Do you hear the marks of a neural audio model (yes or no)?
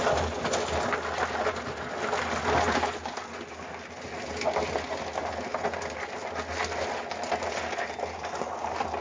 no